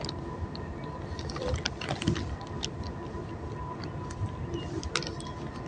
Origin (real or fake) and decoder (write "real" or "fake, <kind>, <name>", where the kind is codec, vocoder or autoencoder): real